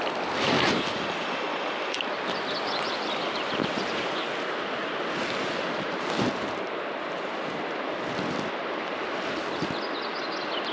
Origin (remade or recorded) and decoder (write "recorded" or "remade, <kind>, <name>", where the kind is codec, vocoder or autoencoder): recorded